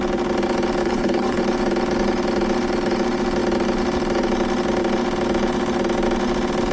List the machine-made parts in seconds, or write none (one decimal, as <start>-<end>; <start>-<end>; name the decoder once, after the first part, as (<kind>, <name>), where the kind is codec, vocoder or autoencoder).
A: 0.8-1.4 (codec, HILCodec)